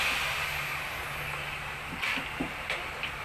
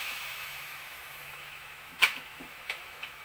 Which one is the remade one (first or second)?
second